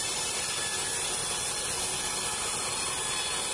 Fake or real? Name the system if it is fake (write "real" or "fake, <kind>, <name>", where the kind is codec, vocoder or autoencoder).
real